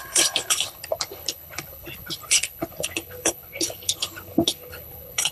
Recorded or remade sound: remade